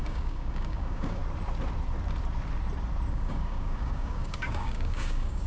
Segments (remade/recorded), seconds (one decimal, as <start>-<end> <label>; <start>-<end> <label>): 0.0-1.2 remade; 1.2-3.1 recorded; 3.1-5.5 remade